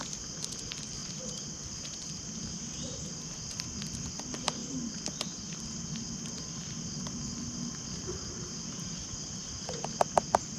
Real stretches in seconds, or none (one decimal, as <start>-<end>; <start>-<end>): 0.0-10.6